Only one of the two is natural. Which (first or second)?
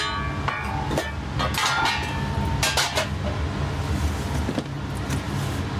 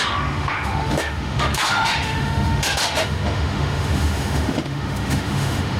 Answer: first